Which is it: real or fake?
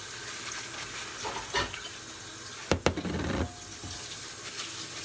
real